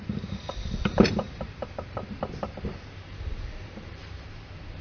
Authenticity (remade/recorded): remade